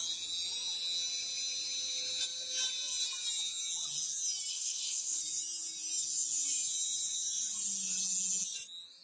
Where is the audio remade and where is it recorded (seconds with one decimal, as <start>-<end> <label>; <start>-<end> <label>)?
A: 0.0-4.5 recorded; 4.5-5.2 remade; 5.2-9.0 recorded